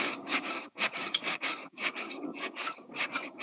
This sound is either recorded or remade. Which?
remade